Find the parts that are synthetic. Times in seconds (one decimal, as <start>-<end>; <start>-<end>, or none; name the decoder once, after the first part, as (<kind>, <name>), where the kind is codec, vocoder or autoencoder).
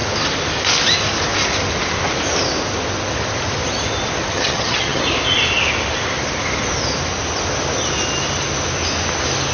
4.3-5.0 (vocoder, HiFi-GAN)